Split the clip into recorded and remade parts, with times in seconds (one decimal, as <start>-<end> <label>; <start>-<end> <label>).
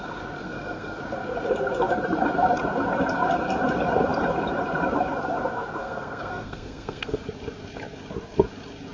0.0-0.4 recorded; 0.4-1.0 remade; 1.0-5.8 recorded; 5.8-7.2 remade; 7.2-8.9 recorded